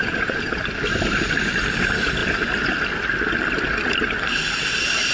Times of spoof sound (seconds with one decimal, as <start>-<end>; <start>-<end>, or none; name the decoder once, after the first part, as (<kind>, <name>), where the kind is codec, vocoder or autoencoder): 0.0-0.6 (vocoder, Vocos)